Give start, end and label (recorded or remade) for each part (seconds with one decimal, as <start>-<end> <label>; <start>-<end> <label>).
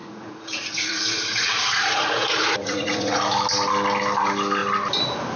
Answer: 0.0-3.2 remade; 3.2-5.4 recorded